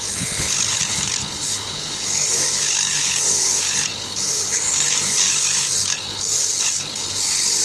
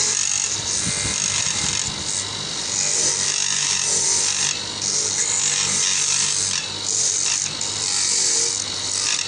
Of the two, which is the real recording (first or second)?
second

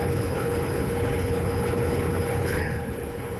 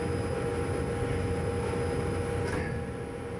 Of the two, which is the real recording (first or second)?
second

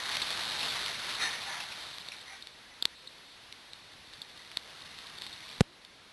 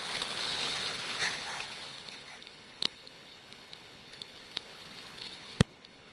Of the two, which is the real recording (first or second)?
first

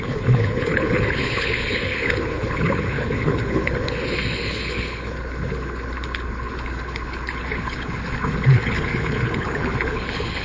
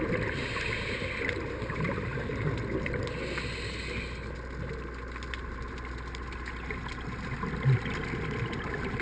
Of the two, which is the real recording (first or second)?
second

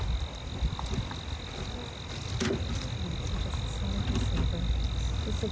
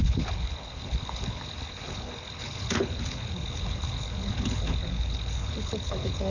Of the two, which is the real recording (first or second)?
first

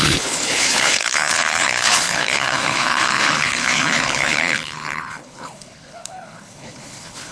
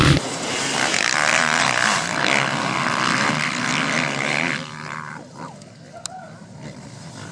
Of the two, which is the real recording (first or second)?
second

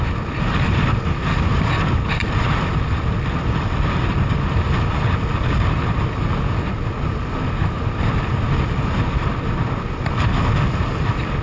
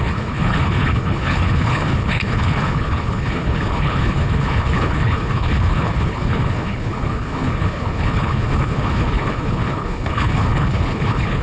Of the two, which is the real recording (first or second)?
first